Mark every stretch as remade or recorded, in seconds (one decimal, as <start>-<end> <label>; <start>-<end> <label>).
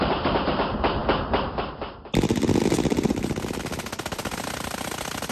0.0-5.3 recorded